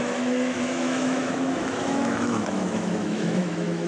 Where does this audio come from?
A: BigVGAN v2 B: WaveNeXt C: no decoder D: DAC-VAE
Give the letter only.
D